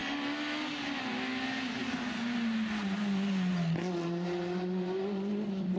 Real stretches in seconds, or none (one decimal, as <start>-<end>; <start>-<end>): 0.0-5.8